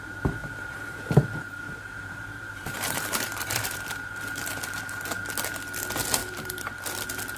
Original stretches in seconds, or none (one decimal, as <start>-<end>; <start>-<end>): 0.0-0.4; 4.8-6.2; 6.8-7.4